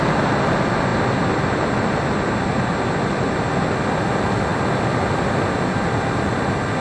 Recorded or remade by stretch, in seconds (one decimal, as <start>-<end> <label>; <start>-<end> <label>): 0.0-6.8 recorded